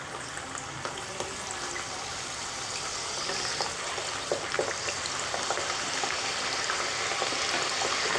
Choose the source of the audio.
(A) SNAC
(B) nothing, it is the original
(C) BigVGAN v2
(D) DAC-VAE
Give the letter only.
B